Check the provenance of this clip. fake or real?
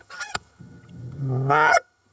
fake